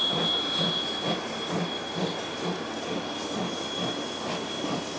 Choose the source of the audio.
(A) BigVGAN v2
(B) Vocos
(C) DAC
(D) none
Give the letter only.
D